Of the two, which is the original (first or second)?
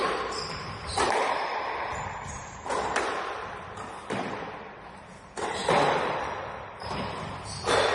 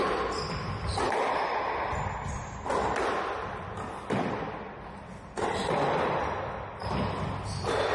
second